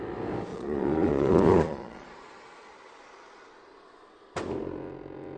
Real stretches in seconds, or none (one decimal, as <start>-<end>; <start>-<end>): 0.0-0.5; 3.5-5.4